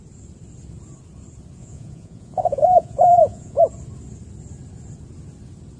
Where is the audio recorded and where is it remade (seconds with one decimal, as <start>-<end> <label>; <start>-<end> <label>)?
0.0-1.6 recorded; 1.6-3.6 remade; 3.6-5.8 recorded